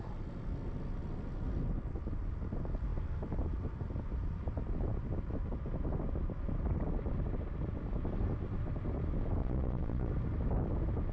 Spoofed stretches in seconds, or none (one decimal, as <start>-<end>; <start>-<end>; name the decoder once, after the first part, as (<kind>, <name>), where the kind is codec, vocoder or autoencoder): 9.4-10.1 (vocoder, Vocos)